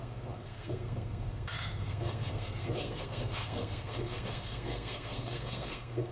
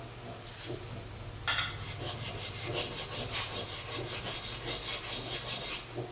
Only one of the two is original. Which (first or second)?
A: second